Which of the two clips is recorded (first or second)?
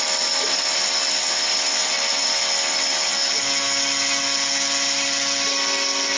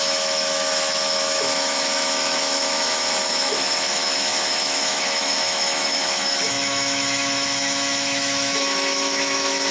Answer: first